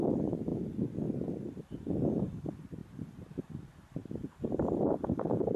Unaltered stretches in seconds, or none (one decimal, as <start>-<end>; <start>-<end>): 0.0-4.0